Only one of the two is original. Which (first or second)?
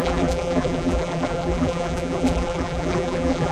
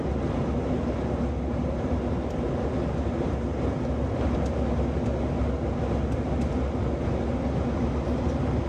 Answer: second